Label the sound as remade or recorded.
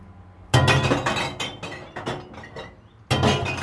recorded